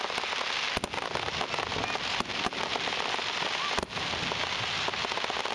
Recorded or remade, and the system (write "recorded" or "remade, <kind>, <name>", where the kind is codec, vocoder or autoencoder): recorded